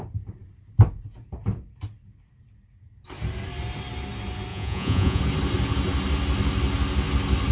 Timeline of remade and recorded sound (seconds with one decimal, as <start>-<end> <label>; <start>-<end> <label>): 0.0-4.5 recorded; 4.5-5.2 remade; 5.2-7.5 recorded